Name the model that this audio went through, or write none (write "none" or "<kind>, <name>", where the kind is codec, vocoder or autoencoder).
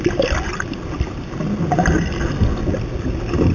none